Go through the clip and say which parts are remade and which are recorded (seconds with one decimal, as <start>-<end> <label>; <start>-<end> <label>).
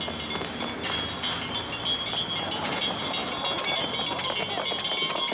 0.0-5.3 recorded